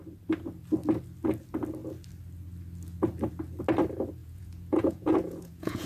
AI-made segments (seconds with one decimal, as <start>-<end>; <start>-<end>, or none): 4.2-5.9